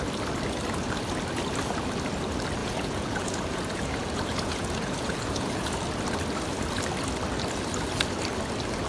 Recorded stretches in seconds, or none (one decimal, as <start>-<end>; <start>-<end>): 0.0-2.6; 5.8-8.9